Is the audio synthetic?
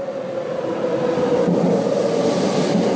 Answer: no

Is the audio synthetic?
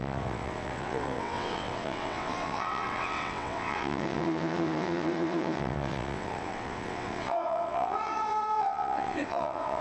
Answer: yes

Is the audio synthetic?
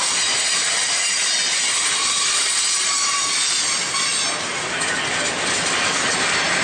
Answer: no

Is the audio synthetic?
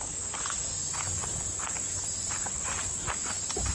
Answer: no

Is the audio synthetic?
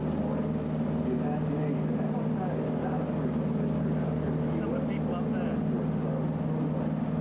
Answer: no